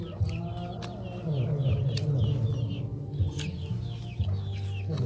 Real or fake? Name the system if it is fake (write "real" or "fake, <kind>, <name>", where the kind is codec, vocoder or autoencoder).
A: real